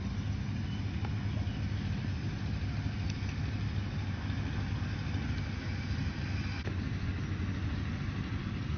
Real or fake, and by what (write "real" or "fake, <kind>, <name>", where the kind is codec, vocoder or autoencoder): real